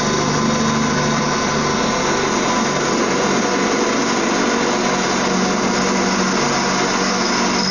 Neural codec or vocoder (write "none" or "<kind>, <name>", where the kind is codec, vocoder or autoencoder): none